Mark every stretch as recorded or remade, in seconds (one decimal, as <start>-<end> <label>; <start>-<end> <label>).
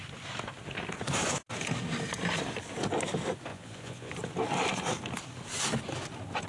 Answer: 0.0-3.5 recorded; 3.5-4.1 remade; 4.1-6.5 recorded